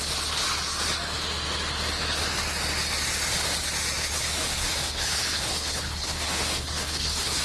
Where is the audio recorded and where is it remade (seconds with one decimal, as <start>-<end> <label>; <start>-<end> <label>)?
0.0-4.1 recorded; 4.1-7.4 remade